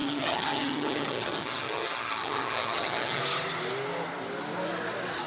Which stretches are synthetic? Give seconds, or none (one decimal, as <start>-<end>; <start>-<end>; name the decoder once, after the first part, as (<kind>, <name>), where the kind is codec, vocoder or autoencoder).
0.0-3.2 (vocoder, HiFi-GAN)